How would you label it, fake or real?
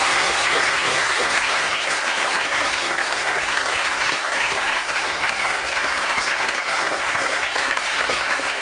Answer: fake